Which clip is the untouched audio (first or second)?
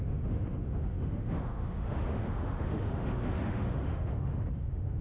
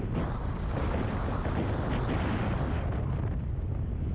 second